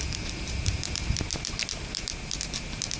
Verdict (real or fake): fake